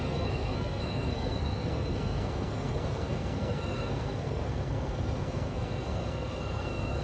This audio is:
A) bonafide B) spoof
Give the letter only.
B